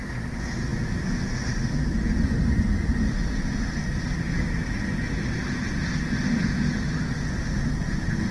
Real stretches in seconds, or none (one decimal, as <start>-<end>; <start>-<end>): 0.0-8.3